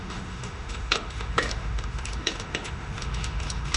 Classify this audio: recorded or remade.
remade